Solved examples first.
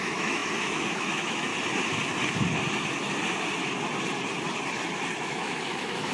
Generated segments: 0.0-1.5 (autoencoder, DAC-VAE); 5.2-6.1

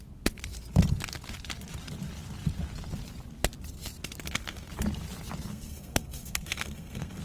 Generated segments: 5.5-7.2 (codec, SNAC)

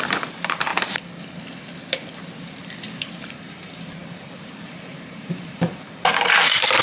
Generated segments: 0.0-0.7 (vocoder, BigVGAN v2); 3.2-6.8

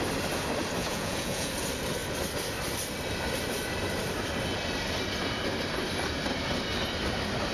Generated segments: 0.8-1.5 (vocoder, Vocos)